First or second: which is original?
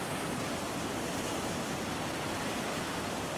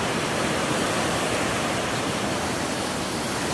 first